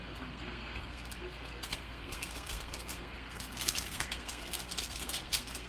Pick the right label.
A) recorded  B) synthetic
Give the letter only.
B